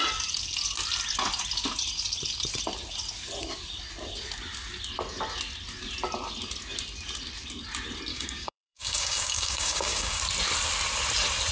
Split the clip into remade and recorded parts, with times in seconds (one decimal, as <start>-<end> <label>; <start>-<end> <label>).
0.0-8.1 recorded; 8.1-10.2 remade; 10.2-11.5 recorded